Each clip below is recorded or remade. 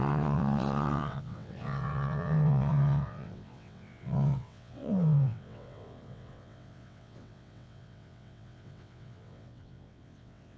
remade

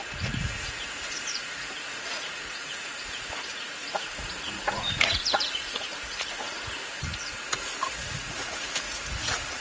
remade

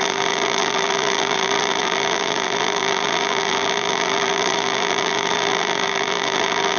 remade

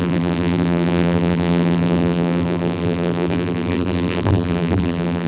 remade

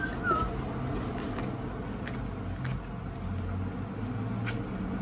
recorded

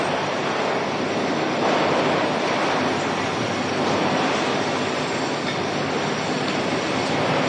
recorded